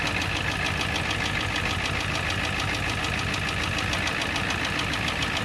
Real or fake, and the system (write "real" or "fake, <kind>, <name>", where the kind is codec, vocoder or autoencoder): real